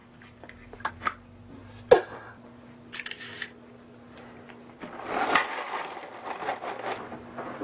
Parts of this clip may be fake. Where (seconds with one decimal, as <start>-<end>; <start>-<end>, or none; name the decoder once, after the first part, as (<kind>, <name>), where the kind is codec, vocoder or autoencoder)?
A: 0.0-0.9 (codec, DAC)